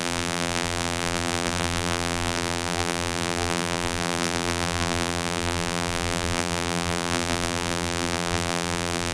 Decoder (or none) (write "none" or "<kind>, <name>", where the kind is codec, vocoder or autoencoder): vocoder, BigVGAN v2